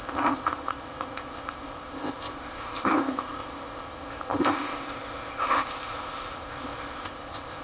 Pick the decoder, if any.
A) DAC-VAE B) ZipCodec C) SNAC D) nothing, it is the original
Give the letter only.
B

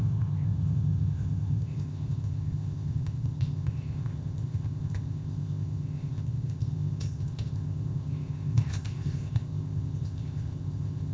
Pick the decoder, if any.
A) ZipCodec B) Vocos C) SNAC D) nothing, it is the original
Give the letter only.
A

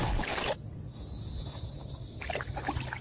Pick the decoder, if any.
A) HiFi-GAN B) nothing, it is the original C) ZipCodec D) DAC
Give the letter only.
B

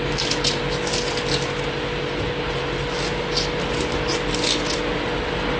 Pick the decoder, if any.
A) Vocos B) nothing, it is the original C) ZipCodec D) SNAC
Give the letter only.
B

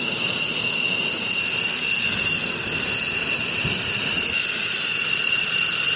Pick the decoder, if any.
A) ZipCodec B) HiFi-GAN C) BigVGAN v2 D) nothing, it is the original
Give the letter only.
D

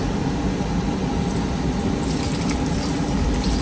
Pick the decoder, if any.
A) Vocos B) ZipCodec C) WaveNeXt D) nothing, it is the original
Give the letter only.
D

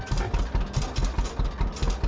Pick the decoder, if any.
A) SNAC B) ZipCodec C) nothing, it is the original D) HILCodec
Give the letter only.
C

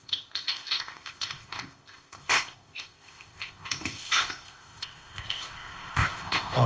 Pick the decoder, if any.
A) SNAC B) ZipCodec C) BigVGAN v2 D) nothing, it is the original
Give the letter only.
B